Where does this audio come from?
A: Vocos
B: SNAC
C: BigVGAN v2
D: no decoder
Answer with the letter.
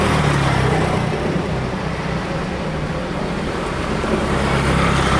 D